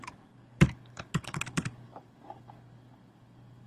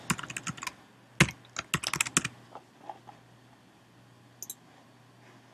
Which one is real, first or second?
second